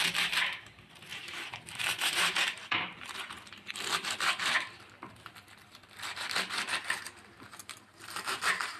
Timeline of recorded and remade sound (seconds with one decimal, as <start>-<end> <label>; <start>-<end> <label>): 0.0-1.1 recorded; 1.1-3.0 remade; 3.0-8.8 recorded